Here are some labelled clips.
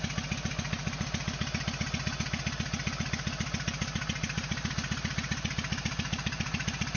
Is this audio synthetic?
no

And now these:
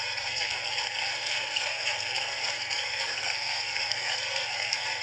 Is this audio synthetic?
yes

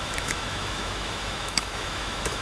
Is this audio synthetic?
yes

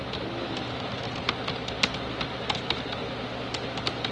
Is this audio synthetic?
no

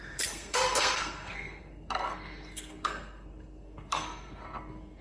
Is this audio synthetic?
yes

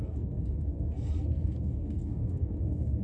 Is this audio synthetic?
yes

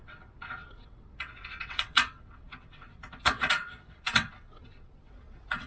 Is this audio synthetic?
yes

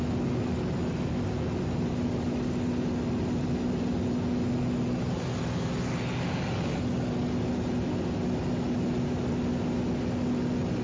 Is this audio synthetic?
no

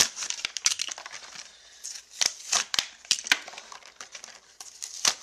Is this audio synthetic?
yes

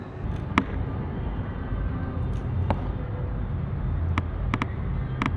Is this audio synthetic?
no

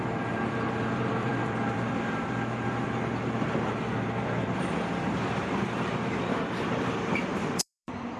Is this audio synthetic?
yes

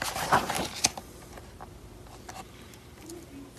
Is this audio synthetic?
no